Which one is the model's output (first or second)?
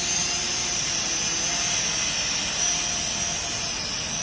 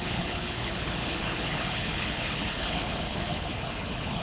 second